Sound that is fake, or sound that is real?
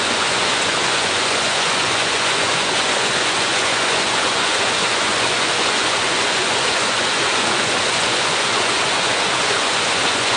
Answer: fake